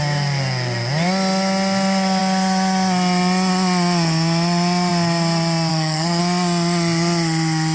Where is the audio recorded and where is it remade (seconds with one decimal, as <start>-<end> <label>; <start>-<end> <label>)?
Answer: 0.0-5.7 recorded; 5.7-6.2 remade; 6.2-7.7 recorded